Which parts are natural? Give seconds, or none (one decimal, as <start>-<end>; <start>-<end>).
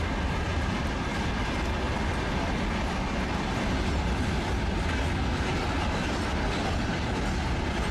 0.0-7.9